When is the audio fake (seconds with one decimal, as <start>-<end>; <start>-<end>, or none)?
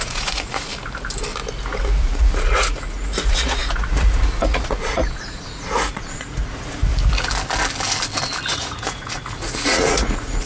0.0-0.7; 2.0-6.9; 8.5-10.5